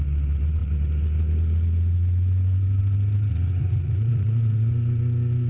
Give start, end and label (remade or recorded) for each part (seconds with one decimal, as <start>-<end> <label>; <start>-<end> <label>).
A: 0.0-3.3 recorded; 3.3-4.7 remade; 4.7-5.5 recorded